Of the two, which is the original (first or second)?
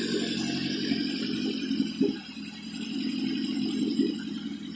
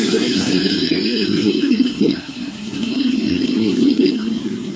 first